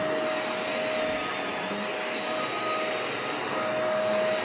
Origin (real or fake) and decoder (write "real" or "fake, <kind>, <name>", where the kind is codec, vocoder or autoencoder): real